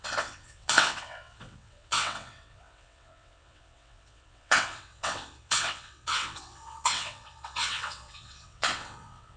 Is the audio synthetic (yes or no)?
yes